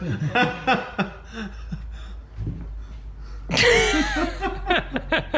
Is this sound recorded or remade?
recorded